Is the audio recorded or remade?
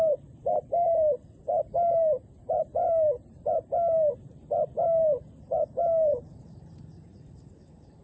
remade